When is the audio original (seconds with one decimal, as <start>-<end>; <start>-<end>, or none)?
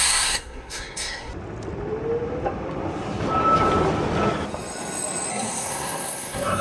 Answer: 1.3-5.3